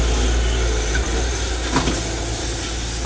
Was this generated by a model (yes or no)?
no